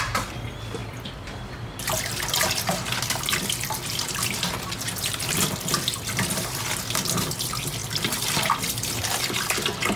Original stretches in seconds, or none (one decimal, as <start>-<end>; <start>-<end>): 0.0-10.0